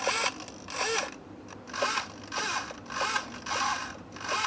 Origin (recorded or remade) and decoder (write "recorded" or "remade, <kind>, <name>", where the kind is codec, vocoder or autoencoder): recorded